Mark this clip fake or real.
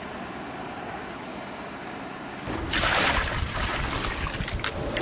real